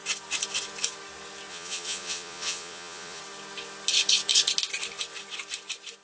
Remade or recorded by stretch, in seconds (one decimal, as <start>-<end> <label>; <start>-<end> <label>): 0.0-1.5 recorded; 1.5-3.2 remade; 3.2-6.0 recorded